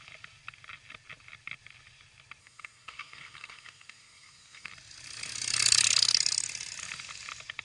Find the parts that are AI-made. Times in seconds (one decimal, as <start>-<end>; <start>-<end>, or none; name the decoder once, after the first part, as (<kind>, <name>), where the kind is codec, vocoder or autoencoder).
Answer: 2.4-4.7 (codec, SNAC)

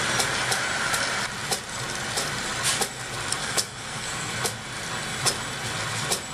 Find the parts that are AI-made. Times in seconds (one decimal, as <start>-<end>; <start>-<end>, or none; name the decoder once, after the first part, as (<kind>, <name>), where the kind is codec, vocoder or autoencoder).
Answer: 3.4-4.3 (codec, SNAC)

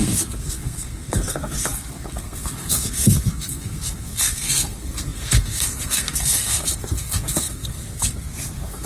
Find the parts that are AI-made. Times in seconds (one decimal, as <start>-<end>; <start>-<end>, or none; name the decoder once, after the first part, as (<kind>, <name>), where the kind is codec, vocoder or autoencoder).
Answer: 0.0-8.9 (codec, SNAC)

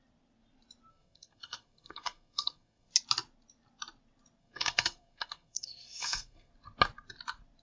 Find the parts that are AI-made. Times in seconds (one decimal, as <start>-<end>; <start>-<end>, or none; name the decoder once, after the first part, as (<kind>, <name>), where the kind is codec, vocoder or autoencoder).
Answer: 0.9-2.9 (codec, SNAC); 4.4-6.5

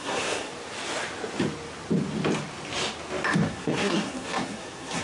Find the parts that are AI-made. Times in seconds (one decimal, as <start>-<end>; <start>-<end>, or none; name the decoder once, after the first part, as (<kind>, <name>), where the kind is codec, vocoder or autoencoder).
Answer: 0.0-0.5 (codec, SNAC); 3.5-5.0